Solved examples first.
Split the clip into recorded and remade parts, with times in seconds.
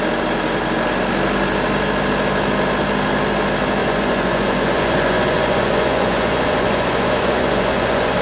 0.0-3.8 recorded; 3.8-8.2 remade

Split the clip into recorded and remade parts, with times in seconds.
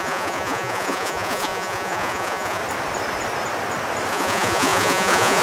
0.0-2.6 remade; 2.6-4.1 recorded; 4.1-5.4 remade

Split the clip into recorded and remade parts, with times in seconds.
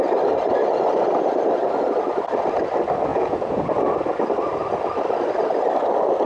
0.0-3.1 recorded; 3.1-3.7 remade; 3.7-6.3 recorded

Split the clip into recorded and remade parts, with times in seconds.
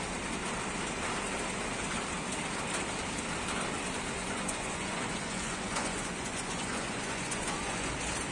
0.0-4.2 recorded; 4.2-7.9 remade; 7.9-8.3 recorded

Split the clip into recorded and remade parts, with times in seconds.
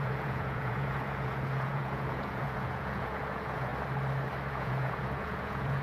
0.0-3.7 remade; 3.7-4.5 recorded; 4.5-5.8 remade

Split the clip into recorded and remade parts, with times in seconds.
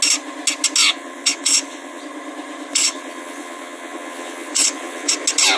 0.0-0.8 recorded; 0.8-2.0 remade; 2.0-2.7 recorded; 2.7-5.1 remade; 5.1-5.6 recorded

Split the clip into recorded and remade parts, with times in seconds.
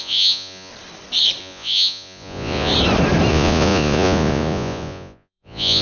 0.0-0.7 remade; 0.7-1.4 recorded; 1.4-2.7 remade; 2.7-3.3 recorded; 3.3-5.8 remade